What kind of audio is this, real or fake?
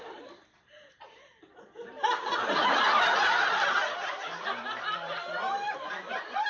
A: fake